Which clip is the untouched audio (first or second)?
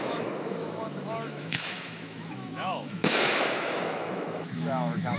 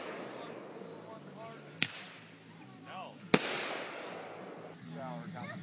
second